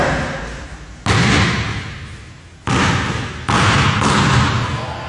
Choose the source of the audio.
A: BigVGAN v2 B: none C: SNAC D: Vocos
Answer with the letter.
B